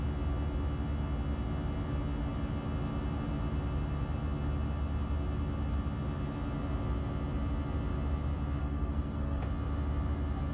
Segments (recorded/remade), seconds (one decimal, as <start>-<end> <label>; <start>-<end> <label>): 0.0-8.6 recorded; 8.6-9.4 remade; 9.4-10.5 recorded